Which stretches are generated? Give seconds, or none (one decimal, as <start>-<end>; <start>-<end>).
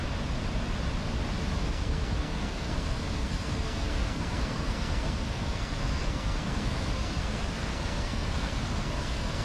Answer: 1.6-9.4